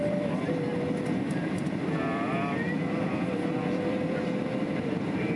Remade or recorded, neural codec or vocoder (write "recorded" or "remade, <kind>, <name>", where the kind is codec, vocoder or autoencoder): remade, vocoder, BigVGAN v2